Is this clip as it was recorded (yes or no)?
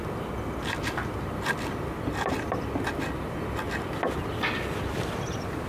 no